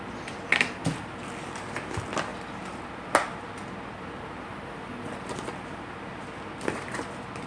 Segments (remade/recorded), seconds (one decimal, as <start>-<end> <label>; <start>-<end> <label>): 0.0-7.5 recorded